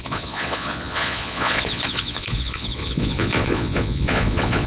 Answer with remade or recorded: remade